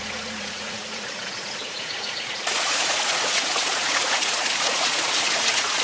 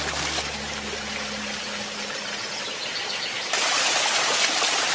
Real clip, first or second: second